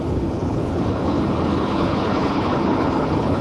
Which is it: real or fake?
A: fake